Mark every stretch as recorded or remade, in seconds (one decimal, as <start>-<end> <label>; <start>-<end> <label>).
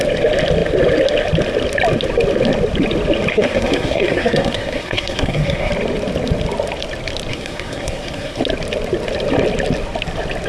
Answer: 0.0-3.3 recorded; 3.3-5.7 remade; 5.7-7.3 recorded; 7.3-8.4 remade; 8.4-10.5 recorded